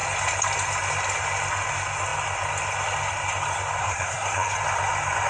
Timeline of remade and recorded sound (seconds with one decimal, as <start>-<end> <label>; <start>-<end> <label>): 0.0-3.8 recorded; 3.8-4.6 remade; 4.6-5.3 recorded